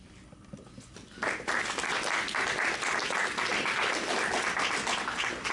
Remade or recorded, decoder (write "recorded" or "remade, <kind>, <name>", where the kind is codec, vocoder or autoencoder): recorded